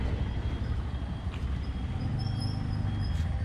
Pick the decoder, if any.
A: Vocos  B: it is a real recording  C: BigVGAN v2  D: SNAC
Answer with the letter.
B